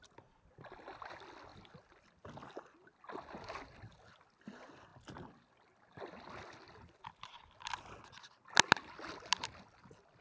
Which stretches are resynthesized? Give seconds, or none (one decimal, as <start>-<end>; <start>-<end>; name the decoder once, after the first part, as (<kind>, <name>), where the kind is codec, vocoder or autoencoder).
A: none